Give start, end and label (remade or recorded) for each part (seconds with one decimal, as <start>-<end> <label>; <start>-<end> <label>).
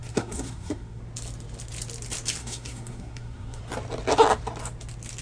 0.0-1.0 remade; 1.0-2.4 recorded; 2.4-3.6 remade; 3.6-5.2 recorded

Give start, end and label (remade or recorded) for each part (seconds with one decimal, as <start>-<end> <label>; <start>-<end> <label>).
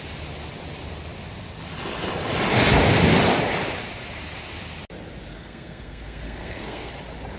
0.0-5.3 recorded; 5.3-6.9 remade; 6.9-7.4 recorded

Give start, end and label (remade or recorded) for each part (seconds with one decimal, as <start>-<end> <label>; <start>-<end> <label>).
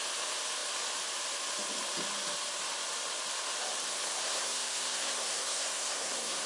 0.0-4.2 recorded; 4.2-6.5 remade